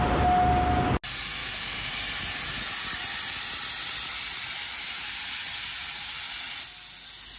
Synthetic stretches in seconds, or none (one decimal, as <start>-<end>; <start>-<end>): 1.4-1.9